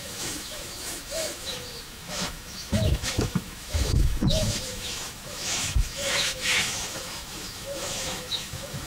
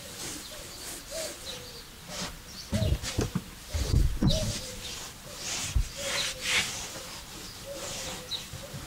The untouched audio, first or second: second